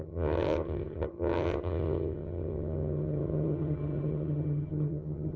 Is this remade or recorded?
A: remade